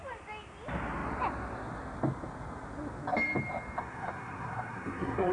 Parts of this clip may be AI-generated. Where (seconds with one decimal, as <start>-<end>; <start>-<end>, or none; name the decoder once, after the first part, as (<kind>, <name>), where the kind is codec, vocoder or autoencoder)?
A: 3.8-5.3 (codec, SNAC)